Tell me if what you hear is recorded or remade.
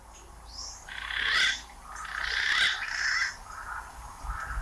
recorded